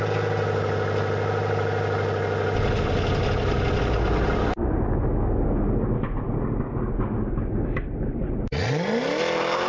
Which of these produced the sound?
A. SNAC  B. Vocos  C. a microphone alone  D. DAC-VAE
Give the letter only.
C